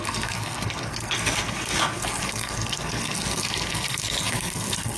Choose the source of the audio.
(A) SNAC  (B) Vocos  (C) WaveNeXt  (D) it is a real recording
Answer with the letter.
A